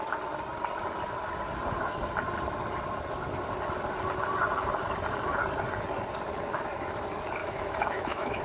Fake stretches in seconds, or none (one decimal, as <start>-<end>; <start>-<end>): 7.4-8.4